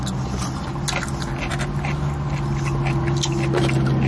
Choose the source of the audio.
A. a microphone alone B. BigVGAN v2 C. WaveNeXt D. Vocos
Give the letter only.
A